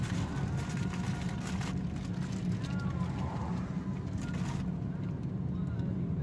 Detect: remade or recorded recorded